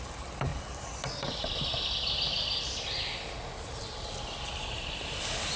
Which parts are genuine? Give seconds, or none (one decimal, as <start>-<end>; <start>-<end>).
0.0-5.6